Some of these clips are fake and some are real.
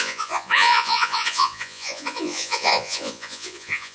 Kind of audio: fake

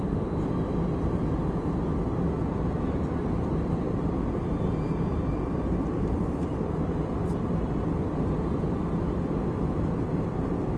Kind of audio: real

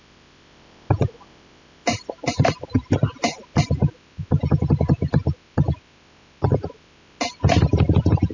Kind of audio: real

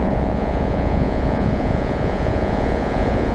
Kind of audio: fake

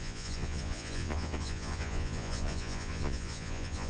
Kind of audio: fake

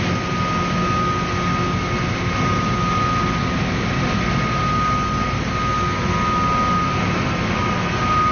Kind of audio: real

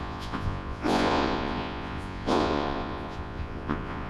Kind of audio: fake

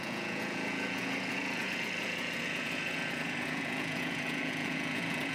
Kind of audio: fake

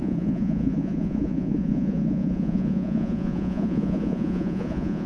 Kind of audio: fake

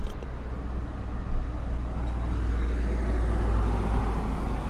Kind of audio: real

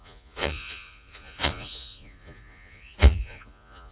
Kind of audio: fake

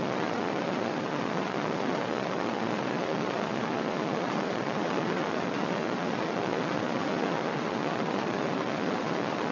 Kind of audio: fake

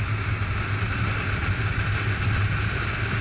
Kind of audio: real